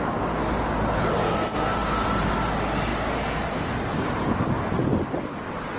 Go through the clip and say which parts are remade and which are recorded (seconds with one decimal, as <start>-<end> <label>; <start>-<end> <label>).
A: 0.0-1.8 recorded; 1.8-2.3 remade; 2.3-5.8 recorded